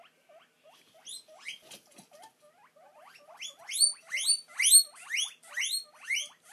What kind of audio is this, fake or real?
real